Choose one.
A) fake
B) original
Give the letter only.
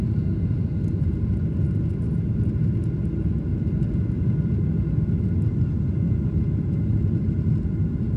B